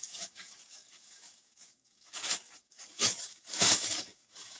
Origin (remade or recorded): remade